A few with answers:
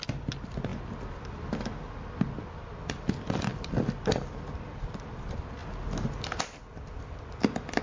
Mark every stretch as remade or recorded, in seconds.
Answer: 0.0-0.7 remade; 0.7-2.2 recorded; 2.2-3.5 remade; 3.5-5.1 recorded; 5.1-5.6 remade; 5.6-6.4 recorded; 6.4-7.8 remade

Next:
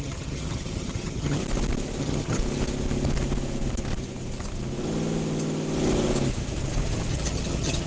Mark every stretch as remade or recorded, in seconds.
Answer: 0.0-1.4 remade; 1.4-2.0 recorded; 2.0-2.4 remade; 2.4-7.1 recorded; 7.1-7.9 remade

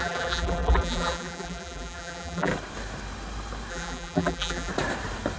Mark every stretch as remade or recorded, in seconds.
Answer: 0.0-2.5 remade; 2.5-3.7 recorded; 3.7-4.7 remade; 4.7-5.4 recorded

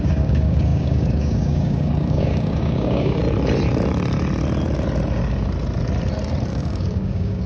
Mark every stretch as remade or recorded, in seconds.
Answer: 0.0-3.2 remade; 3.2-6.5 recorded; 6.5-7.5 remade

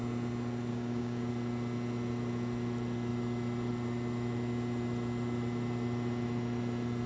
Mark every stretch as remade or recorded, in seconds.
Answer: 0.0-0.7 recorded; 0.7-1.3 remade; 1.3-7.1 recorded